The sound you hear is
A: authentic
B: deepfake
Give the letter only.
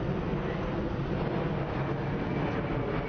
A